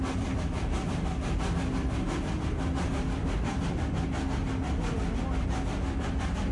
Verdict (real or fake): real